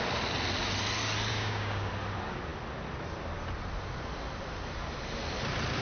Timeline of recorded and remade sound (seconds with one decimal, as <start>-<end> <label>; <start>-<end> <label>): 0.0-1.3 recorded; 1.3-1.9 remade; 1.9-5.8 recorded